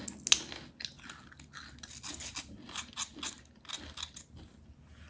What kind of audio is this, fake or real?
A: real